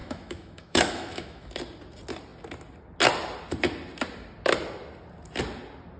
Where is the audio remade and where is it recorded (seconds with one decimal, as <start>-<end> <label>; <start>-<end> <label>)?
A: 0.0-1.5 remade; 1.5-6.0 recorded